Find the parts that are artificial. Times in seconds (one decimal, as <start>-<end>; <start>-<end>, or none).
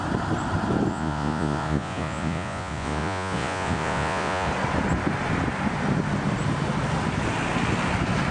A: 0.9-4.5